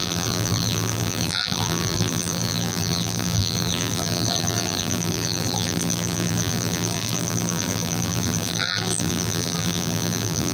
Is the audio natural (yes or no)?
no